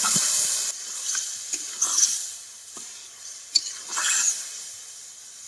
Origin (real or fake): real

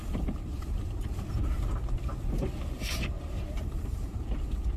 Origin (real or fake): fake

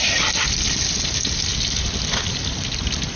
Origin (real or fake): real